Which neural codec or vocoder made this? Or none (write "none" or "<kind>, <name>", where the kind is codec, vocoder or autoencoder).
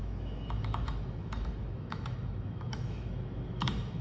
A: autoencoder, DAC-VAE